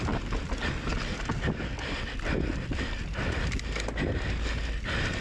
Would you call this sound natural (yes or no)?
yes